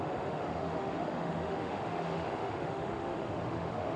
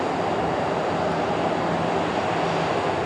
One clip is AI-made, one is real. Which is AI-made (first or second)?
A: first